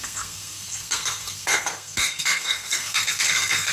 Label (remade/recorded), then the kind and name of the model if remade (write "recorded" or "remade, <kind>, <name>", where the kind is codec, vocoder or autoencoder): remade, codec, SNAC